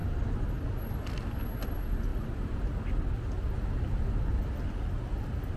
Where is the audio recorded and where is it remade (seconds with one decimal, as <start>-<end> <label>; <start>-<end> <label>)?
0.0-5.6 recorded